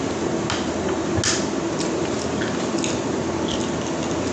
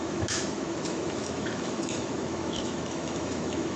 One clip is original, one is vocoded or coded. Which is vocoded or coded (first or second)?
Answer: second